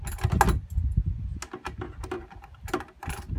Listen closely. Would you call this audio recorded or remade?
recorded